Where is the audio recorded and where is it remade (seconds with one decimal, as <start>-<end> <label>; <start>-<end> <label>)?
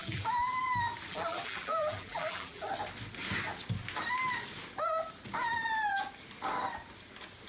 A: 0.0-0.6 remade; 0.6-1.1 recorded; 1.1-2.7 remade; 2.7-7.5 recorded